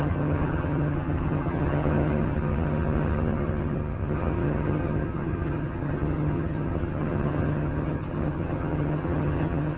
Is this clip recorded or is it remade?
remade